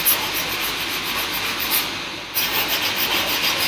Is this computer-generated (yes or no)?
no